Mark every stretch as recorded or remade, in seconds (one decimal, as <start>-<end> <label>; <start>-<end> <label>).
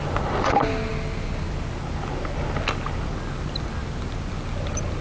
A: 0.0-5.0 recorded